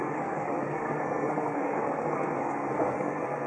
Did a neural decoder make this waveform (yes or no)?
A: yes